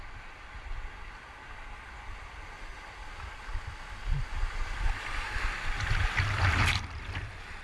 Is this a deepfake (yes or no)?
no